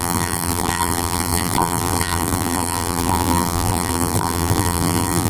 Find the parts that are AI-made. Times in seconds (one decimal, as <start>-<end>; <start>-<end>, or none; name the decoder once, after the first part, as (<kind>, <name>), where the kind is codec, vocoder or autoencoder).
0.0-5.3 (vocoder, BigVGAN v2)